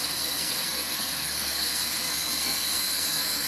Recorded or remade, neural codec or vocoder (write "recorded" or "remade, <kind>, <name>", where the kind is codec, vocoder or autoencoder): remade, codec, SNAC